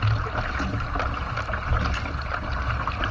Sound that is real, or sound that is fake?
real